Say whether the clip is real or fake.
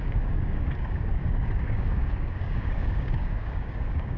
fake